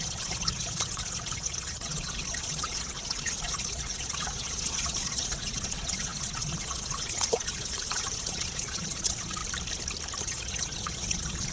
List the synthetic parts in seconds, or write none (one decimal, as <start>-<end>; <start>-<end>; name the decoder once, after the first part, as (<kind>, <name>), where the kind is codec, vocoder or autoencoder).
0.0-9.4 (vocoder, Vocos); 10.2-11.5

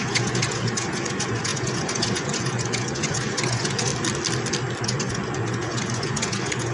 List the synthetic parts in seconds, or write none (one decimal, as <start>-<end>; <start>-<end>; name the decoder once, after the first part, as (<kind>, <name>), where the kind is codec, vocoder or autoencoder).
0.0-3.9 (vocoder, Vocos); 4.8-6.7

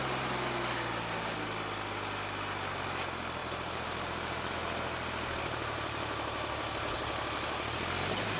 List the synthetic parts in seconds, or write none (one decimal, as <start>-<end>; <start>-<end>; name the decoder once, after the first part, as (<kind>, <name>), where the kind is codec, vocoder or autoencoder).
3.4-4.5 (vocoder, BigVGAN v2)

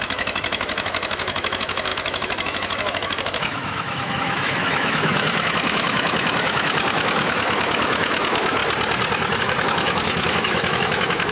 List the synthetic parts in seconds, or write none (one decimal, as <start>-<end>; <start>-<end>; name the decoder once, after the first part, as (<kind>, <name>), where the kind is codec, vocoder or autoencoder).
0.0-8.6 (autoencoder, DAC-VAE); 9.4-11.3

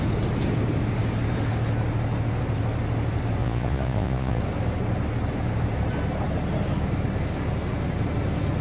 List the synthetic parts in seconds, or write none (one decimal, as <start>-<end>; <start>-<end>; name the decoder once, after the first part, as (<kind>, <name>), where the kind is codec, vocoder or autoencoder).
3.4-4.4 (vocoder, Vocos)

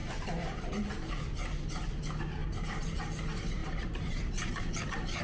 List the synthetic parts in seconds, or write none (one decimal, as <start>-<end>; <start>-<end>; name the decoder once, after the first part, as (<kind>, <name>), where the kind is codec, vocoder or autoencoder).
0.0-0.7 (vocoder, BigVGAN v2); 2.4-3.1; 3.6-4.3